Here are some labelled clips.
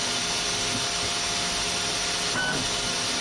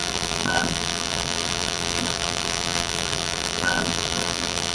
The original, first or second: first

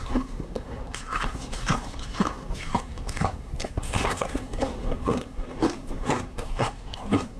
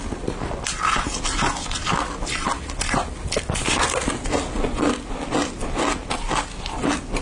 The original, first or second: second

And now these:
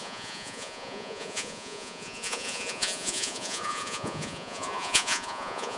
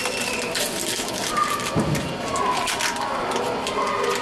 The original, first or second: second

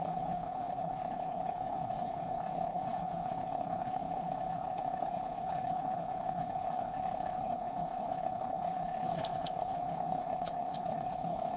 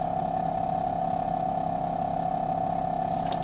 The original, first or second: second